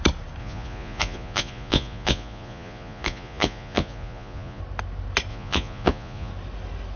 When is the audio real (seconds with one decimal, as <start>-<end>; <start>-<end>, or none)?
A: 0.0-0.4; 4.6-5.3; 6.3-7.0